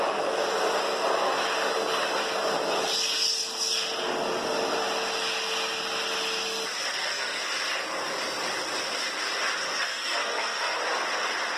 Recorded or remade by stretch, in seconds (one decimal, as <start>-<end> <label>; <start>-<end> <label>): 0.0-6.9 recorded; 6.9-7.4 remade; 7.4-9.6 recorded; 9.6-10.8 remade; 10.8-11.6 recorded